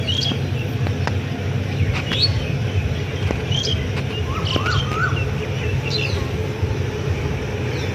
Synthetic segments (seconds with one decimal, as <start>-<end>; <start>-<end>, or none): none